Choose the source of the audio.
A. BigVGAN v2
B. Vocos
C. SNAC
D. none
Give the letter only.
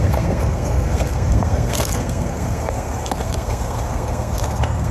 C